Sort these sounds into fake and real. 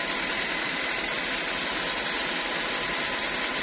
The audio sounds real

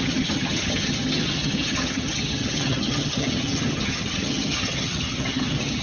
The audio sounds fake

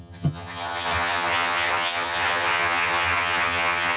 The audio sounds fake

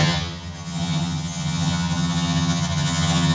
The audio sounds fake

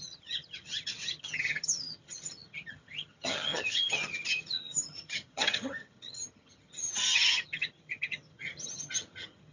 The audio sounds fake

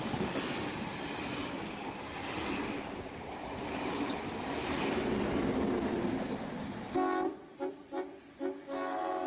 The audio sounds real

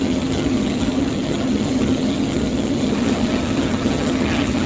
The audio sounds fake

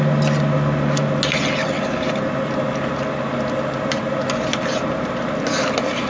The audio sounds real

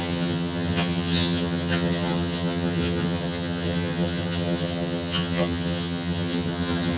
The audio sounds fake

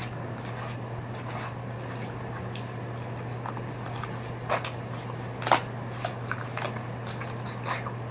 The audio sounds real